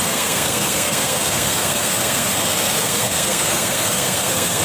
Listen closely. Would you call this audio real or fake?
fake